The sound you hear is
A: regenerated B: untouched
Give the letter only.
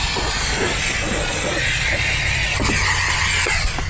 B